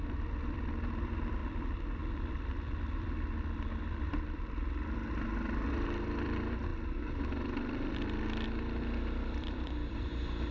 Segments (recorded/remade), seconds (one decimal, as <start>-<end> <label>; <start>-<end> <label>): 0.0-6.7 remade; 6.7-9.0 recorded; 9.0-10.5 remade